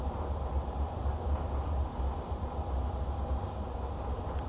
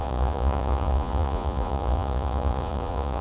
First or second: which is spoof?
second